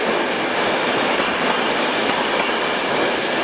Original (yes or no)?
yes